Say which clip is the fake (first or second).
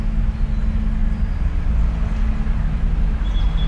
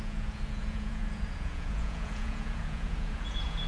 second